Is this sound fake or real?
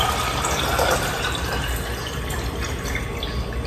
real